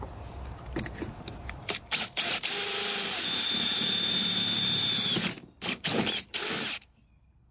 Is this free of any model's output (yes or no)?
no